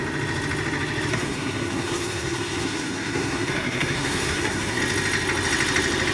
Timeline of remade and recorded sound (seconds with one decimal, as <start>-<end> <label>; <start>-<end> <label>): 0.0-1.1 recorded; 1.1-4.8 remade; 4.8-6.1 recorded